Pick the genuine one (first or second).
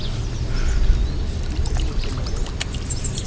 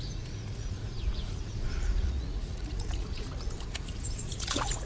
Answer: first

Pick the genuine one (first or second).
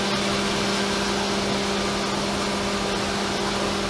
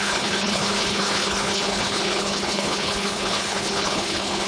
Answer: first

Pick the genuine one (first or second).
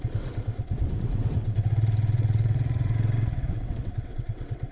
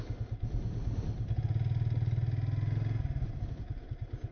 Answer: second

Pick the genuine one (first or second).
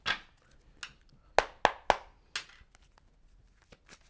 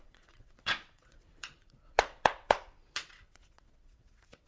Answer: first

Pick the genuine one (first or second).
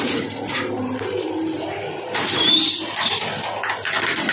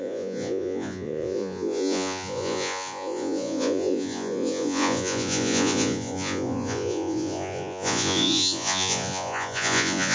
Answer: first